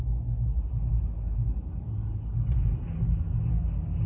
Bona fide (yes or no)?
yes